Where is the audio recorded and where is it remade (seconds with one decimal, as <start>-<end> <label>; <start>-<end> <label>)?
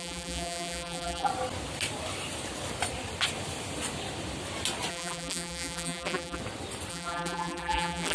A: 0.0-1.3 remade; 1.3-4.9 recorded; 4.9-6.4 remade; 6.4-6.9 recorded; 6.9-8.1 remade